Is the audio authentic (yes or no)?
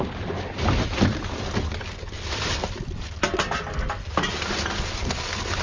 yes